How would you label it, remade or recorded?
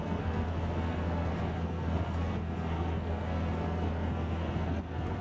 remade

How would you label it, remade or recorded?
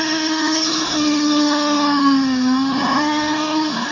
remade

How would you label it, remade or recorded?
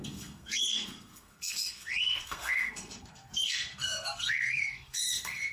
remade